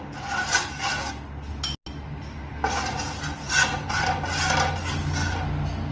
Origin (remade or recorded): recorded